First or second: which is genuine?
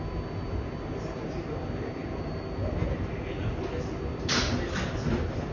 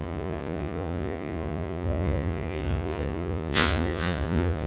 first